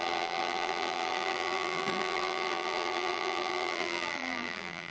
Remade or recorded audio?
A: remade